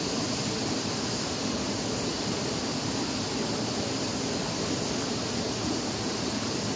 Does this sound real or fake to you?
real